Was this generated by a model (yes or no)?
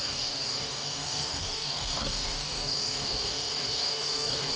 yes